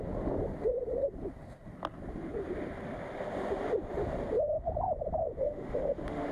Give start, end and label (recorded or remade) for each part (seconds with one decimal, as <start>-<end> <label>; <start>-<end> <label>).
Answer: 0.0-5.4 recorded; 5.4-6.3 remade